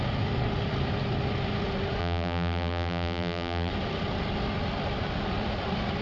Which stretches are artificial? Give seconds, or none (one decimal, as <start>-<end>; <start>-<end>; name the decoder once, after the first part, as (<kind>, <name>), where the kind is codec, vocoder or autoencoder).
2.0-3.7 (vocoder, BigVGAN v2)